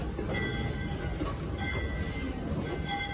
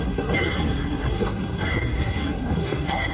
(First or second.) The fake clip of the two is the second